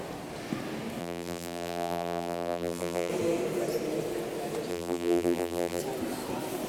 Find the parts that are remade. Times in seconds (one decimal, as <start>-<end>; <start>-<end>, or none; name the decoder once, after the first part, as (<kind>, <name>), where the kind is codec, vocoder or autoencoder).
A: 1.0-3.1 (vocoder, BigVGAN v2); 4.7-5.8